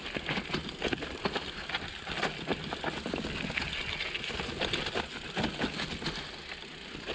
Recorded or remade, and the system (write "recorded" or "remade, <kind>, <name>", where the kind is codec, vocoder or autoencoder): recorded